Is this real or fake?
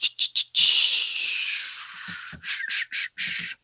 real